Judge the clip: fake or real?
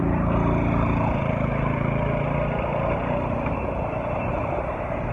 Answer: real